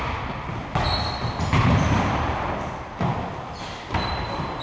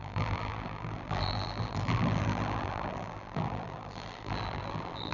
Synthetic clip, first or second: second